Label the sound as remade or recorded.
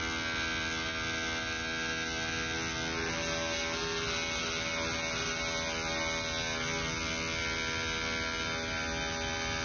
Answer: recorded